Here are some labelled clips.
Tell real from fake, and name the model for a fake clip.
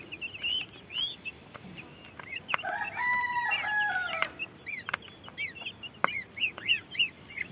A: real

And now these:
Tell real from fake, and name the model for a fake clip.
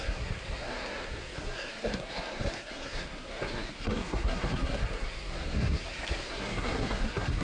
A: fake, codec, SNAC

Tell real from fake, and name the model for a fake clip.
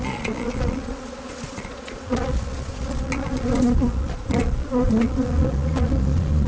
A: fake, vocoder, Vocos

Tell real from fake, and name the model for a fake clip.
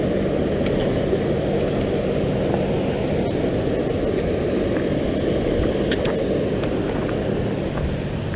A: real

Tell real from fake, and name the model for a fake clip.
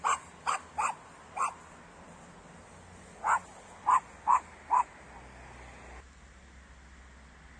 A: real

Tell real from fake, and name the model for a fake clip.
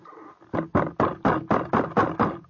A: real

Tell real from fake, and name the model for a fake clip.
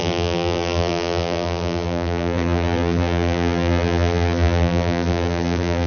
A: fake, vocoder, BigVGAN v2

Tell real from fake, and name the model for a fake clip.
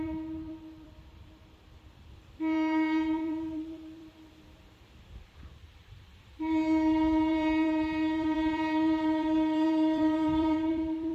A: fake, vocoder, BigVGAN v2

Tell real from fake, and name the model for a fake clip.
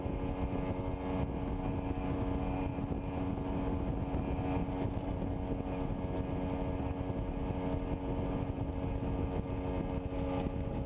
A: real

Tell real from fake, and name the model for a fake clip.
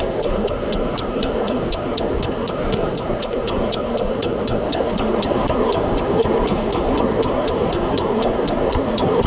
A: fake, codec, SNAC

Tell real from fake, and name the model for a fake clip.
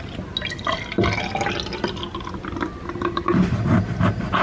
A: real